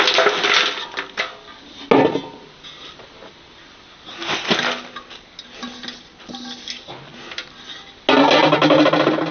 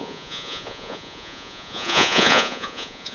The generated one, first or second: second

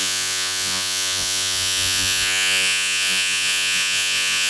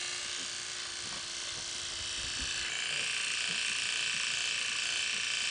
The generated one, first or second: first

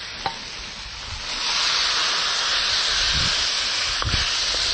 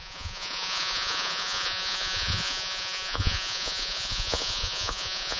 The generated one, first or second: second